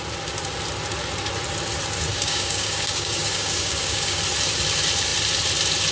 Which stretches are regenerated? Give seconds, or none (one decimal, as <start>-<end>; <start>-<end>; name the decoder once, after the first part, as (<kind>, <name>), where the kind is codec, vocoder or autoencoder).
2.1-4.2 (codec, DAC)